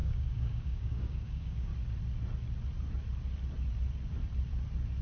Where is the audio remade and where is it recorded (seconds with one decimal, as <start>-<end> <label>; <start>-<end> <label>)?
0.0-1.7 remade; 1.7-5.0 recorded